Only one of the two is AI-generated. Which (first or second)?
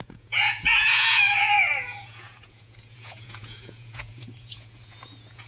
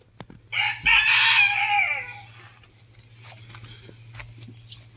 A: first